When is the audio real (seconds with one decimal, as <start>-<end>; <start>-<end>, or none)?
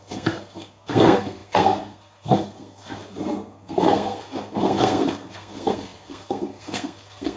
none